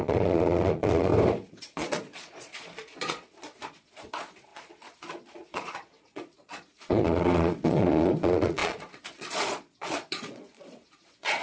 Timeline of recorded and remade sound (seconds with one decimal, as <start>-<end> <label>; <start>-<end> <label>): 0.0-1.1 remade; 1.1-1.6 recorded; 1.6-11.4 remade